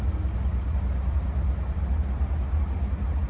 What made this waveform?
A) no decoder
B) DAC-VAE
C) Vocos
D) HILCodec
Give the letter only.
A